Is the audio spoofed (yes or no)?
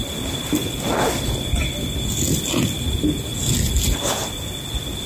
no